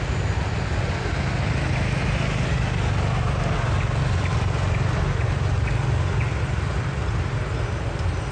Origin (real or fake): real